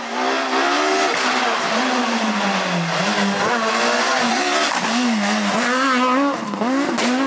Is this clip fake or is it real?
real